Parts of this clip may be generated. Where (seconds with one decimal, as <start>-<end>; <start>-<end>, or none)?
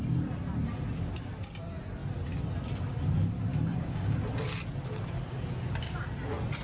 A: 3.5-4.2